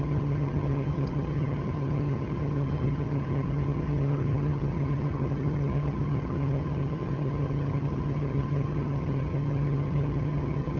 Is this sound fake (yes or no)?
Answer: yes